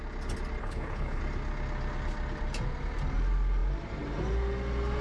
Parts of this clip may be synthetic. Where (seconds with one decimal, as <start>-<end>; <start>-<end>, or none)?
0.6-1.2